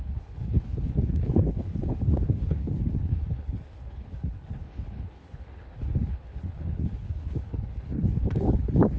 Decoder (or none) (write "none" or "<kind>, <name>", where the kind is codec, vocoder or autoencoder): codec, HILCodec